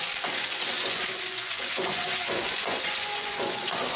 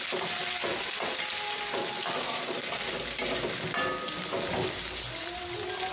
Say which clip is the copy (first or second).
first